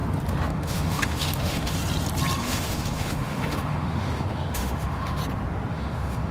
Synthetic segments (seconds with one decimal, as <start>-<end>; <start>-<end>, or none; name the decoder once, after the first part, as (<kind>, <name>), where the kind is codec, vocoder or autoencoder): 0.5-1.8 (autoencoder, DAC-VAE); 2.4-5.2; 5.7-6.3